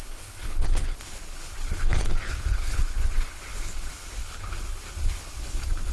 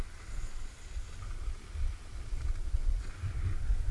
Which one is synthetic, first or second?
first